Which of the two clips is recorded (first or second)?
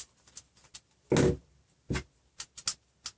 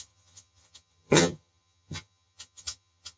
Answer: first